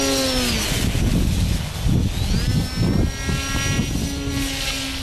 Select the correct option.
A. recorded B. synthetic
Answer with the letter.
A